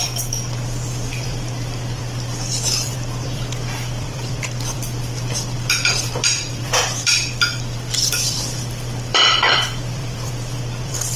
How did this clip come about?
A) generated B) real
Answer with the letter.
A